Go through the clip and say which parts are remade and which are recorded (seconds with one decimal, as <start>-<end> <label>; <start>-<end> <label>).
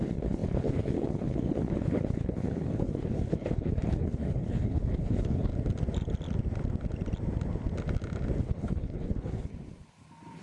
0.0-5.5 remade; 5.5-8.4 recorded; 8.4-9.5 remade; 9.5-10.4 recorded